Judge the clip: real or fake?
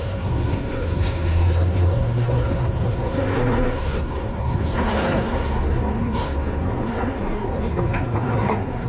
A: fake